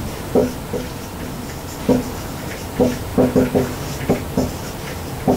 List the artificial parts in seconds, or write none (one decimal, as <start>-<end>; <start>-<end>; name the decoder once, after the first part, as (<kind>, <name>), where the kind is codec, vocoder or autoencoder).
0.0-0.4 (vocoder, BigVGAN v2); 1.8-3.1; 4.1-5.4